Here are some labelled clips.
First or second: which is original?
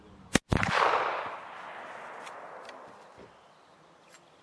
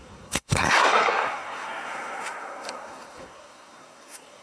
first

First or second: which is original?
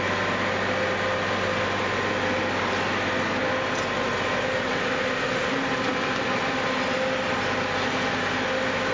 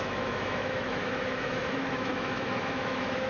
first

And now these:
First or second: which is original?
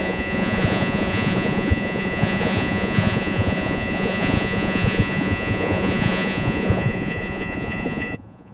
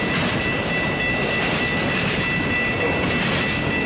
second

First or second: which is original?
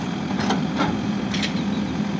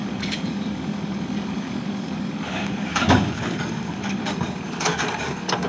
first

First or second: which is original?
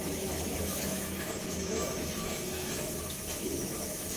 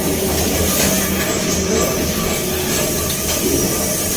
second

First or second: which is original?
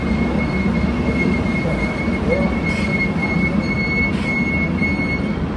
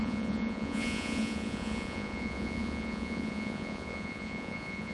first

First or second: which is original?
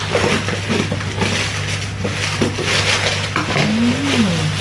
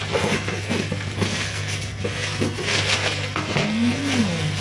first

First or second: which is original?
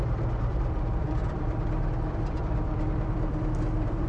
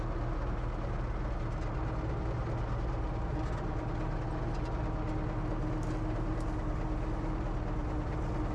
second